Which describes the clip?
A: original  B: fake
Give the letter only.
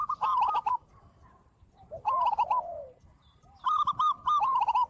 B